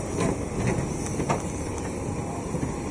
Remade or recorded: recorded